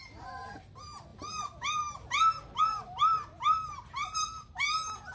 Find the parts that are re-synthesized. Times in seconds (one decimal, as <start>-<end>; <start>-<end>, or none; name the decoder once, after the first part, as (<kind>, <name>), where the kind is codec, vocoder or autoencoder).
none